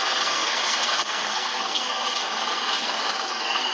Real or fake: fake